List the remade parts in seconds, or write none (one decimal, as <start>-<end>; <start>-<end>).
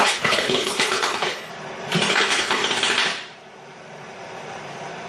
0.0-1.5; 2.1-2.6